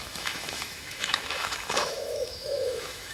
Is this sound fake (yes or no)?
yes